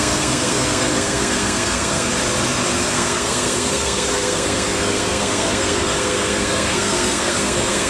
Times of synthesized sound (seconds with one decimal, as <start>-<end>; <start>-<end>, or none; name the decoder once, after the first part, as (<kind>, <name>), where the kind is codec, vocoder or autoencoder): 0.0-2.1 (codec, SNAC); 2.8-7.9